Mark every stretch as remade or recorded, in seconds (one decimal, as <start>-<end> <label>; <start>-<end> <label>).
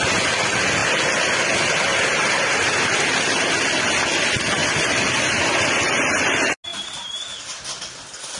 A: 0.0-1.9 recorded; 1.9-2.9 remade; 2.9-4.6 recorded; 4.6-5.4 remade; 5.4-6.7 recorded; 6.7-7.8 remade; 7.8-8.4 recorded